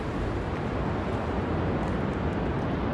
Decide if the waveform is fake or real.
real